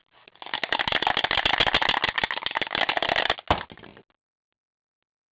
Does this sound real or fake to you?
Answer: real